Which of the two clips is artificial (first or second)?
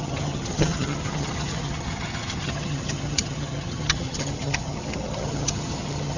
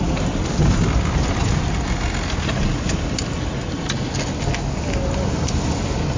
first